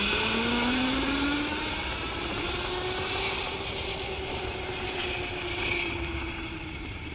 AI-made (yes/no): yes